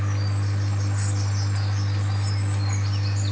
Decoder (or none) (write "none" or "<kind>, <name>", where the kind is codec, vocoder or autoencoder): none